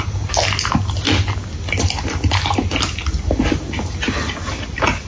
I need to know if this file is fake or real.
real